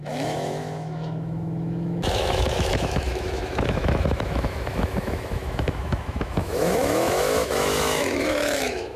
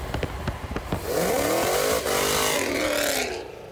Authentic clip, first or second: second